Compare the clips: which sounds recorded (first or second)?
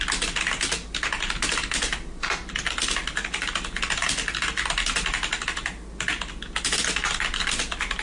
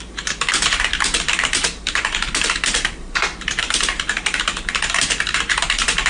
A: first